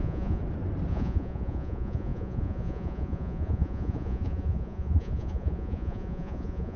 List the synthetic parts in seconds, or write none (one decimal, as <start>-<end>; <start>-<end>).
0.0-0.4; 0.9-6.8